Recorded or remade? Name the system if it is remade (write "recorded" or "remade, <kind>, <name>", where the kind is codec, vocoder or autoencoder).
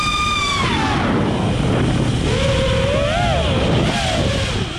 recorded